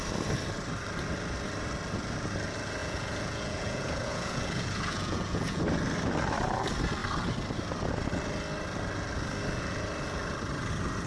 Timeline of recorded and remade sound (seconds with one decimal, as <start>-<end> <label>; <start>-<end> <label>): 0.0-2.8 recorded; 2.8-5.6 remade; 5.6-11.1 recorded